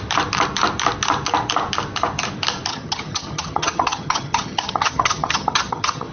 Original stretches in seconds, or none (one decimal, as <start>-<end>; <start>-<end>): 0.0-2.7